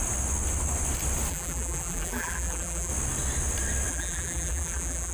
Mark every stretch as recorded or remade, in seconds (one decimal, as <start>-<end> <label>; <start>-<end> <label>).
0.0-1.3 recorded; 1.3-2.9 remade; 2.9-3.9 recorded; 3.9-5.1 remade